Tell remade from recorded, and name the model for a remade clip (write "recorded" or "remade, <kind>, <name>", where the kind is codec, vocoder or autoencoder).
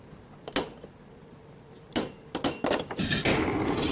recorded